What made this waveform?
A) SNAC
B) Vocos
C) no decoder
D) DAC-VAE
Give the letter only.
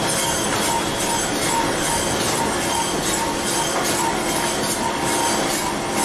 C